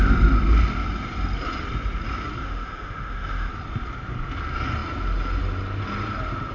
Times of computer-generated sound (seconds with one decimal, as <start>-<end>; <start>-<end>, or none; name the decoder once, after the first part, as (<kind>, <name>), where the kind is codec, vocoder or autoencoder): 2.4-3.5 (autoencoder, DAC-VAE)